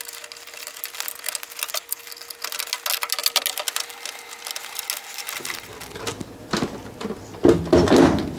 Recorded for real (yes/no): yes